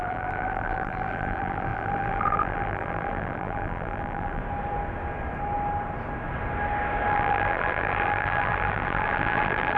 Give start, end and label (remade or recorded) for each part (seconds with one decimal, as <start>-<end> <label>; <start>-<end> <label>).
0.0-4.4 remade; 4.4-7.1 recorded; 7.1-9.8 remade